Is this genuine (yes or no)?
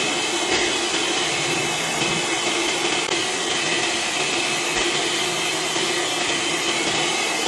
yes